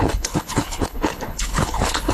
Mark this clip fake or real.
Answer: fake